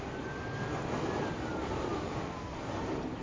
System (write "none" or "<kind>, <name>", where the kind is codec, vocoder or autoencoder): none